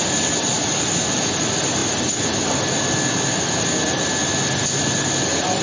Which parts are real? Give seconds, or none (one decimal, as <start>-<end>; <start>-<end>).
0.0-5.6